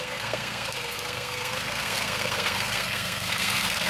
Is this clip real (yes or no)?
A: no